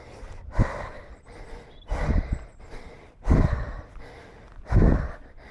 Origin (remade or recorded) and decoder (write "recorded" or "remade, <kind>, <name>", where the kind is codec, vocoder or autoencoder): recorded